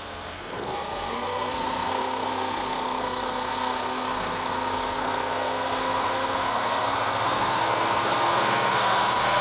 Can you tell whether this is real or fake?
fake